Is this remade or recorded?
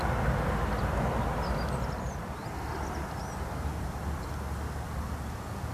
recorded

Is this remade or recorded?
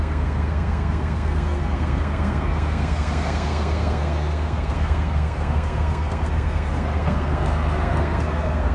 remade